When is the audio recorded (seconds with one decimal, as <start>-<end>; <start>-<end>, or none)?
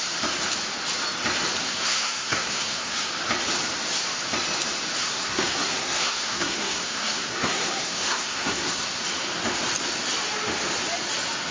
0.0-1.6; 3.1-5.0; 9.0-11.5